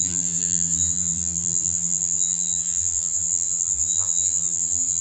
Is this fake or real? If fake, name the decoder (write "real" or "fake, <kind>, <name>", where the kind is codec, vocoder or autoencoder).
fake, vocoder, BigVGAN v2